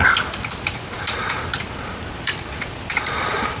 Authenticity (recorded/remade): recorded